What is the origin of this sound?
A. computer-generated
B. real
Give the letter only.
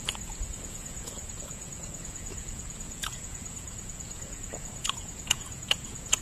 A